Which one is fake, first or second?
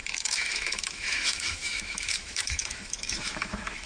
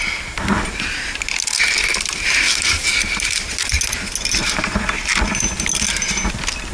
first